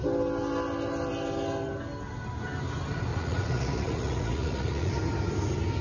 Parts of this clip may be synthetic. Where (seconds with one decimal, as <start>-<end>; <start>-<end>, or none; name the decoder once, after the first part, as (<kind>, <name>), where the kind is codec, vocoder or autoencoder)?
3.1-4.9 (vocoder, Vocos)